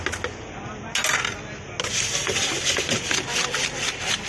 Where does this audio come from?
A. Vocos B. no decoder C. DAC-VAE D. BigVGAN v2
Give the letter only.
B